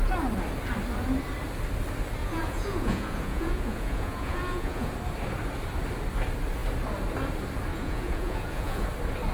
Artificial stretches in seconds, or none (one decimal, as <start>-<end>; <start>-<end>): 2.2-4.9; 7.7-8.9

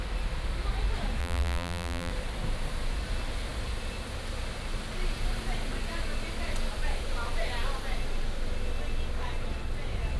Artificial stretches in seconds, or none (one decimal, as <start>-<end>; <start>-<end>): 1.2-2.1

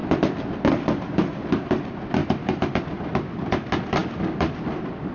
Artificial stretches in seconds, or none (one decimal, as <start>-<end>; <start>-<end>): 0.7-2.2; 2.8-5.1

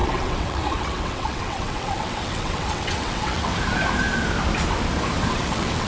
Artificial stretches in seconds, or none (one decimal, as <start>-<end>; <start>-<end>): 0.0-3.5; 5.3-5.9

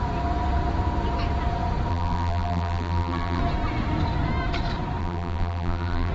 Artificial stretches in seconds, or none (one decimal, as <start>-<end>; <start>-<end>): 1.9-3.4; 5.0-6.1

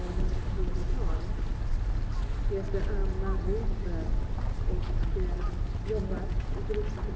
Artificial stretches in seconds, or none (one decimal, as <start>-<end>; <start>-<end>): none